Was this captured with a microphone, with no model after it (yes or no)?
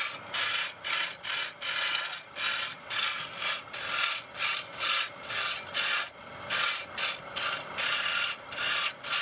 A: yes